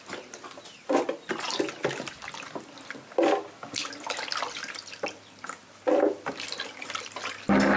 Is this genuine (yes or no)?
yes